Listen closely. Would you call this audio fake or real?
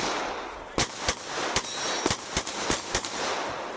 real